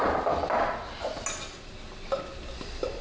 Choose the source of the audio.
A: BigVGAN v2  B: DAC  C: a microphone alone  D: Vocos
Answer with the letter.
C